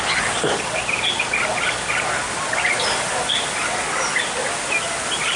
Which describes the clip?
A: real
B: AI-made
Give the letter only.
A